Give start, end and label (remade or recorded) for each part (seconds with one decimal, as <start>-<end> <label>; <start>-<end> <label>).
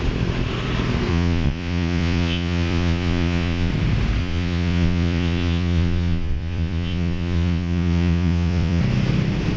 0.0-1.1 recorded; 1.1-3.7 remade; 3.7-4.2 recorded; 4.2-8.8 remade; 8.8-9.6 recorded